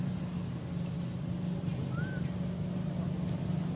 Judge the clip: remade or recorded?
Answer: recorded